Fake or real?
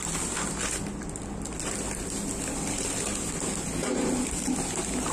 real